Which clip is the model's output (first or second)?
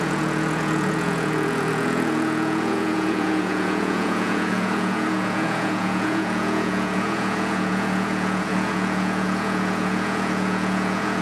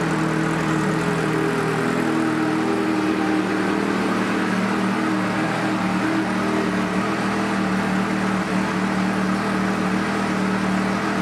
first